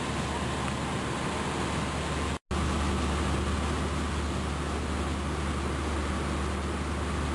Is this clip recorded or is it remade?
recorded